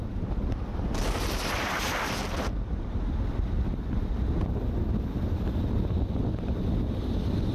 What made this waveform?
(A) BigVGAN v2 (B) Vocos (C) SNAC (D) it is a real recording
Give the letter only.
D